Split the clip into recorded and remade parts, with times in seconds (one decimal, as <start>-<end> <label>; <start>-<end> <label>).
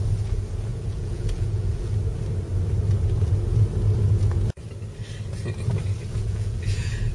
0.0-0.7 recorded; 0.7-1.9 remade; 1.9-6.2 recorded; 6.2-7.1 remade